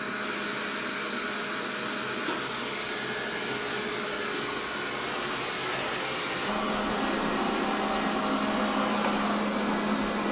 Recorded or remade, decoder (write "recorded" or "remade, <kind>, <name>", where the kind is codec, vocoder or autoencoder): recorded